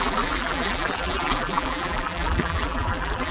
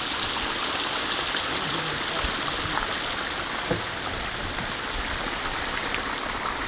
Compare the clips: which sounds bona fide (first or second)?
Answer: second